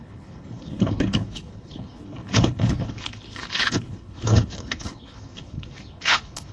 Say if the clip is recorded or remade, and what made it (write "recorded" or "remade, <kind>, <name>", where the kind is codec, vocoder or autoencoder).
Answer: remade, codec, HILCodec